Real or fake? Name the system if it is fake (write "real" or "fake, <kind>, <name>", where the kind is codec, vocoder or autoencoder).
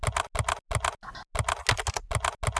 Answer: real